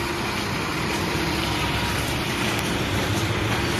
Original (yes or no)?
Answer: no